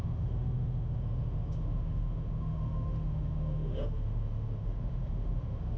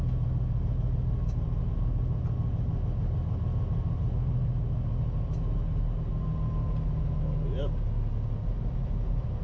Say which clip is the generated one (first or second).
first